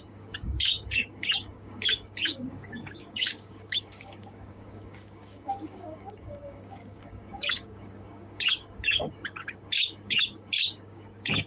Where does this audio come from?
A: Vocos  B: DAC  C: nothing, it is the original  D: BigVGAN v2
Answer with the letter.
B